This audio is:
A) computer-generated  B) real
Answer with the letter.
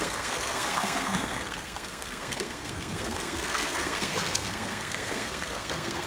A